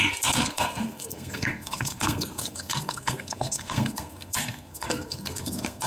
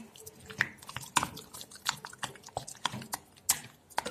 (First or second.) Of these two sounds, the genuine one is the second